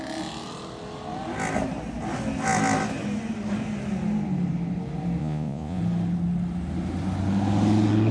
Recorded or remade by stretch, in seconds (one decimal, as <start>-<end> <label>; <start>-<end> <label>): 0.0-5.2 recorded; 5.2-5.8 remade; 5.8-8.1 recorded